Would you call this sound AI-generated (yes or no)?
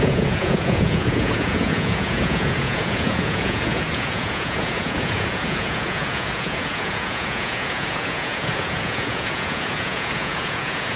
yes